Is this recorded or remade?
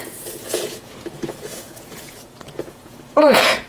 remade